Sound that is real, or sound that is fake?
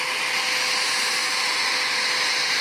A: real